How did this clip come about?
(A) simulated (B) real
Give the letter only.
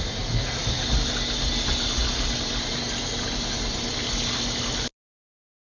B